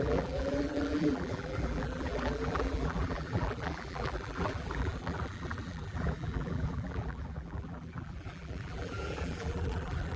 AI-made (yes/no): yes